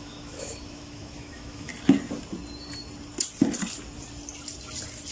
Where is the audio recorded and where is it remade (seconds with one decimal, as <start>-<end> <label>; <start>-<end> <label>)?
0.0-1.7 remade; 1.7-5.1 recorded